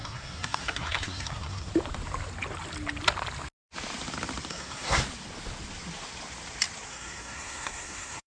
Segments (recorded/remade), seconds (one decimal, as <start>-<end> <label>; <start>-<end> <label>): 0.0-1.7 remade; 1.7-4.5 recorded; 4.5-5.0 remade; 5.0-6.9 recorded; 6.9-8.3 remade